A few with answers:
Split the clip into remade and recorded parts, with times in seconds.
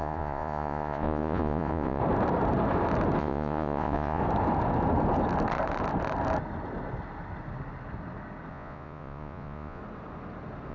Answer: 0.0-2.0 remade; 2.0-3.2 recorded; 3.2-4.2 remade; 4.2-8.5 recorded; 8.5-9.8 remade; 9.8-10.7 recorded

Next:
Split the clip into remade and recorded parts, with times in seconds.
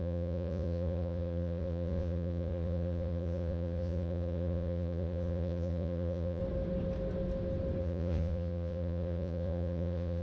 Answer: 0.0-6.4 remade; 6.4-7.8 recorded; 7.8-10.2 remade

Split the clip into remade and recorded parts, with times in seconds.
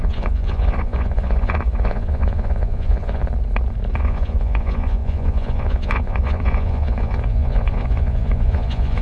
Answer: 0.0-3.2 remade; 3.2-3.9 recorded; 3.9-9.0 remade